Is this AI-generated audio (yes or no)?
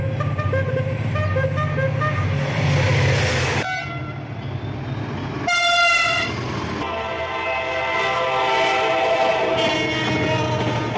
no